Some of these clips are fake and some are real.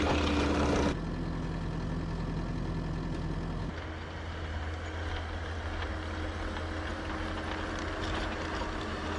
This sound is real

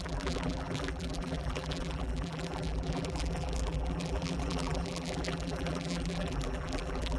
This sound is fake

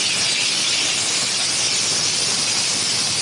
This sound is real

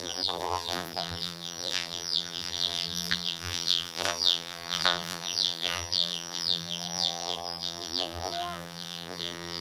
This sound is fake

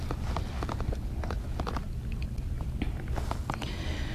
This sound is real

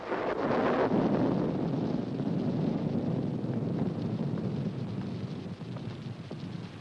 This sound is real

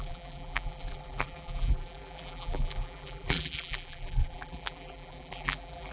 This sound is fake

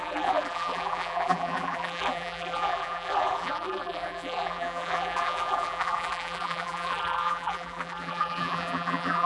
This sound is fake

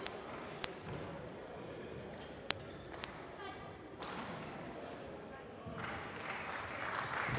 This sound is fake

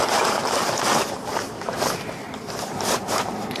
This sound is fake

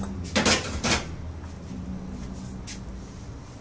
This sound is real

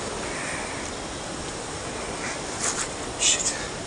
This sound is real